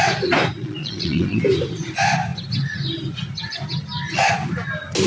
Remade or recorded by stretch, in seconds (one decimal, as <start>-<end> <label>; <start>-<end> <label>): 0.0-0.6 recorded; 0.6-1.4 remade; 1.4-5.1 recorded